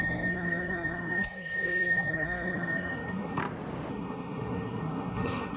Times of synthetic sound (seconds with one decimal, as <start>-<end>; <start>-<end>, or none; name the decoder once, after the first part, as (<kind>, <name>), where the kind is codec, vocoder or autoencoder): 0.0-3.4 (codec, SNAC); 3.9-5.6